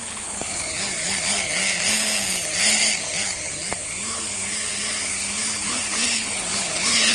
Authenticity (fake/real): fake